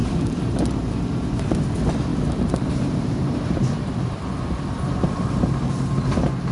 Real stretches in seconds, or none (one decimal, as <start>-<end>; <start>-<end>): 0.9-2.1; 3.6-6.5